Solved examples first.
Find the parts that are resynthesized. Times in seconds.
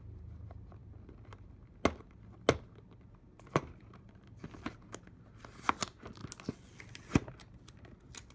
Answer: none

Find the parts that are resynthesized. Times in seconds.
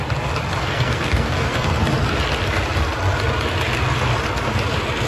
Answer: 0.6-1.8 (codec, SNAC)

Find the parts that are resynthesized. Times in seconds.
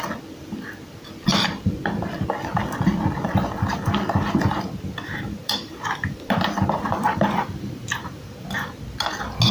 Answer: 5.4-8.3 (vocoder, BigVGAN v2)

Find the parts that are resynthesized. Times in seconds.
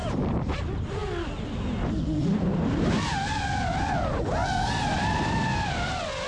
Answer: 0.0-0.6 (vocoder, BigVGAN v2)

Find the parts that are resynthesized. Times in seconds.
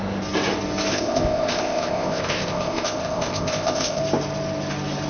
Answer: 0.9-4.0 (codec, ZipCodec)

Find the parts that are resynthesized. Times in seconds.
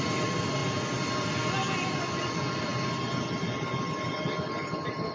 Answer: none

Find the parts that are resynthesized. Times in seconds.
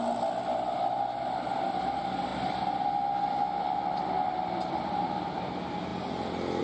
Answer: none